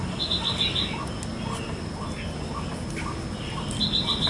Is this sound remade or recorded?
recorded